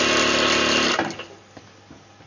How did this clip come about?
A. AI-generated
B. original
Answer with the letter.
B